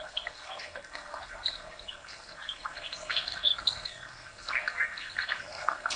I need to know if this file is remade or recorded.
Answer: remade